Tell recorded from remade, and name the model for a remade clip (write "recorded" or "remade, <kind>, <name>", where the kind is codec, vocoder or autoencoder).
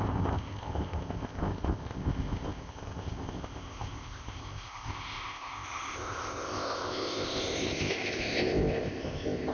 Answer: remade, codec, ZipCodec